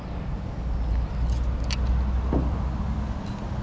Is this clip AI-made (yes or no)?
no